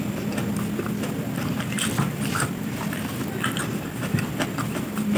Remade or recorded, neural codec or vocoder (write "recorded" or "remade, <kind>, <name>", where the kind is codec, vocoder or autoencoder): recorded